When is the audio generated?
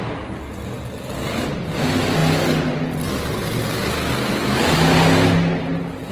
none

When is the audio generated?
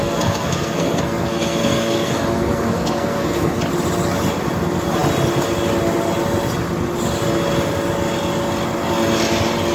0.0-3.6 (codec, SNAC)